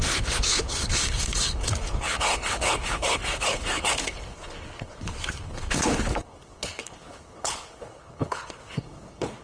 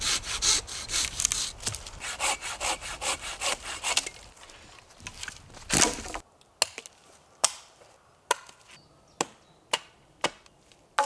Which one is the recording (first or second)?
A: second